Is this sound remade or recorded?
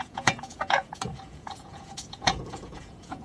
remade